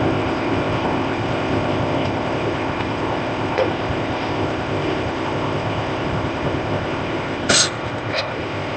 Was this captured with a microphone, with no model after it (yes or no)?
no